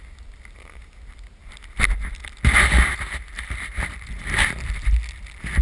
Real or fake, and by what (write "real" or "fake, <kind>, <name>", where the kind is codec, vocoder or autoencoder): real